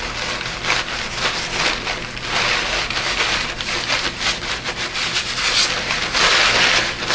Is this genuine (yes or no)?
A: yes